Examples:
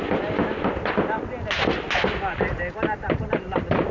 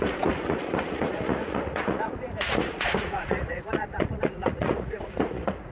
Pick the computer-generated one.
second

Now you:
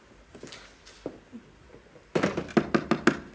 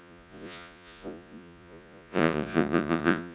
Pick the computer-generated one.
second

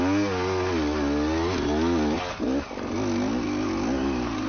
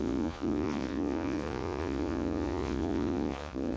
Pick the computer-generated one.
second